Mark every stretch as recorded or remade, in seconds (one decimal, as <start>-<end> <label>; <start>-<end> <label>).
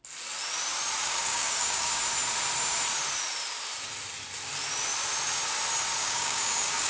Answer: 0.0-1.0 recorded; 1.0-1.9 remade; 1.9-6.0 recorded; 6.0-6.9 remade